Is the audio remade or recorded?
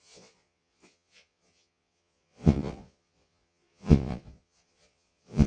remade